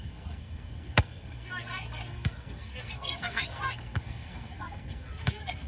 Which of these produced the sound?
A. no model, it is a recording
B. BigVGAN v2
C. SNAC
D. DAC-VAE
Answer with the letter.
C